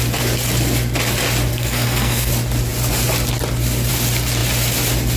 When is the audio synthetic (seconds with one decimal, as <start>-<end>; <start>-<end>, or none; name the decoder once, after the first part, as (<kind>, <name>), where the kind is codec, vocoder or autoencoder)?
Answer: 1.5-2.3 (codec, SNAC)